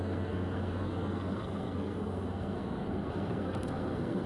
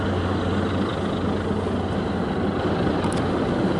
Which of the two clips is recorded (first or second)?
second